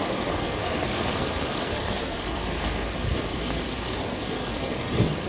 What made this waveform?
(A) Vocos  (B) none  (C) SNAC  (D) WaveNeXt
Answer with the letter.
C